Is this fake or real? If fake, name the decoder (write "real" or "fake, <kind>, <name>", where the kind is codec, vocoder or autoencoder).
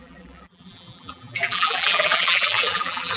fake, vocoder, BigVGAN v2